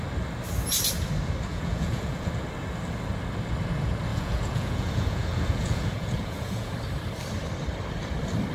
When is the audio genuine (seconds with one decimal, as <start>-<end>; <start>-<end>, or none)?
0.0-1.5; 2.3-4.1; 6.7-8.5